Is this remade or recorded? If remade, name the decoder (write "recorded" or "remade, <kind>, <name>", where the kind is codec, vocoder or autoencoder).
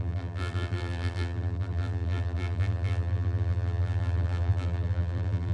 remade, vocoder, BigVGAN v2